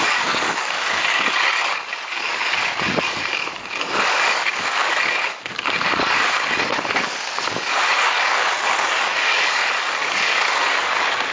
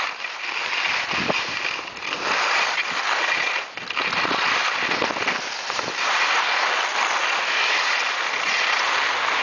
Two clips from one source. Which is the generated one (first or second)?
first